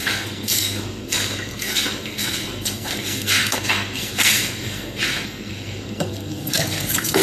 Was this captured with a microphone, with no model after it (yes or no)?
no